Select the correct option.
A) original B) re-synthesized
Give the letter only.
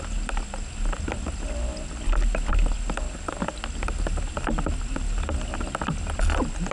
A